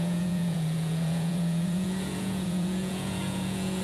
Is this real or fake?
fake